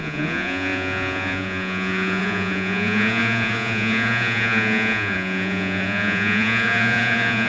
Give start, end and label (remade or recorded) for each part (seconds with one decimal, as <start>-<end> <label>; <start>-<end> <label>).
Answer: 0.0-7.5 remade